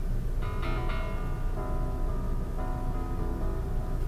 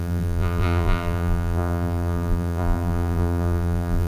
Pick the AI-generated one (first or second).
second